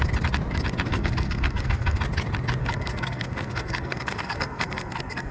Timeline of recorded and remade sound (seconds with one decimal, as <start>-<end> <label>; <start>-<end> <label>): 0.0-0.9 recorded; 0.9-2.0 remade; 2.0-2.6 recorded; 2.6-5.3 remade